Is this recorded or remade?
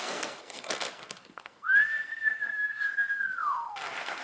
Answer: remade